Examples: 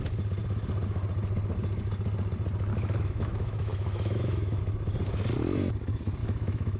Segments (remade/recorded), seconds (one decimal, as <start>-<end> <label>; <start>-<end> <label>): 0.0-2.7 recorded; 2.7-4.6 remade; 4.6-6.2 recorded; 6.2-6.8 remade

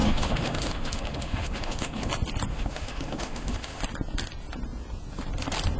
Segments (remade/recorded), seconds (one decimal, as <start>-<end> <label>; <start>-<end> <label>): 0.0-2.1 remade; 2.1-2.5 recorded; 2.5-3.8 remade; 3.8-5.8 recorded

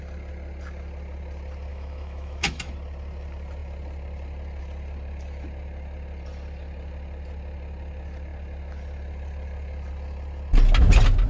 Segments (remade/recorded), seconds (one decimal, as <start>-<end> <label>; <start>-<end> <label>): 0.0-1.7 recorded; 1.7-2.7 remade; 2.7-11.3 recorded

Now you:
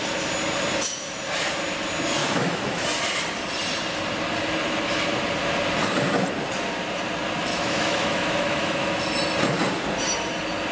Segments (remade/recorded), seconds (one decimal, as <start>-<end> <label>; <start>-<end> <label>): 0.0-2.2 recorded; 2.2-2.8 remade; 2.8-7.5 recorded; 7.5-9.0 remade; 9.0-10.7 recorded